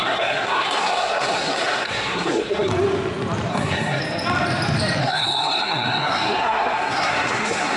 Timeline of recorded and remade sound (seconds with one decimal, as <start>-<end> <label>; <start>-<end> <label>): 0.0-2.7 remade; 2.7-3.5 recorded; 3.5-4.0 remade; 4.0-5.0 recorded; 5.0-7.8 remade

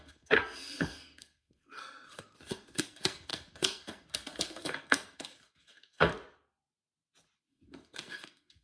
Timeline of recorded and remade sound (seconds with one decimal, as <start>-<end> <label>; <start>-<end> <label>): 0.0-6.1 remade; 6.1-7.5 recorded; 7.5-8.6 remade

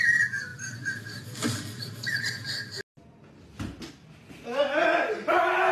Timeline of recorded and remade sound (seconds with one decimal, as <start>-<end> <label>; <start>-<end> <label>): 0.0-5.7 recorded

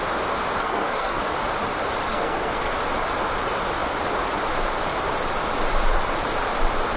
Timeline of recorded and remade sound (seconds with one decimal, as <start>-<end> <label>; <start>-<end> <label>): 0.0-0.6 recorded; 0.6-1.2 remade; 1.2-2.1 recorded; 2.1-2.7 remade; 2.7-7.0 recorded